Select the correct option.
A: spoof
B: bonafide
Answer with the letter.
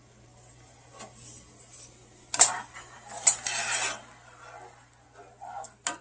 B